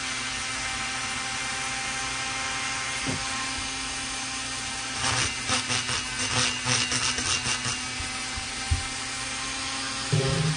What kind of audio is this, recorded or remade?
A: recorded